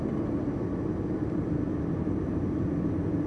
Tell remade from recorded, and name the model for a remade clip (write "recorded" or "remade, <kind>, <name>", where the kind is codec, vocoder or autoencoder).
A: recorded